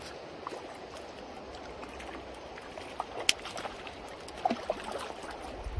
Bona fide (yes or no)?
yes